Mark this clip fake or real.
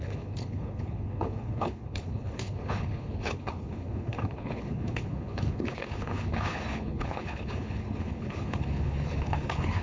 fake